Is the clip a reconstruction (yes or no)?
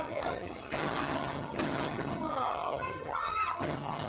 yes